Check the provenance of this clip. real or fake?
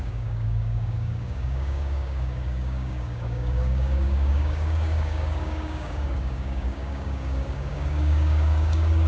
fake